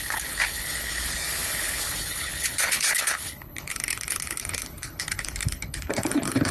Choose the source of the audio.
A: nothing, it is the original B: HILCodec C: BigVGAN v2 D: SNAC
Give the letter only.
B